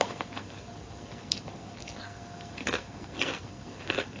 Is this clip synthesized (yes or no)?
yes